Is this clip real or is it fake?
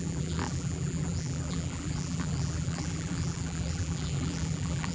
fake